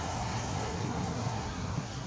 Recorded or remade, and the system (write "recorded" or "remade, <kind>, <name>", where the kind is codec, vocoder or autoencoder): remade, codec, SNAC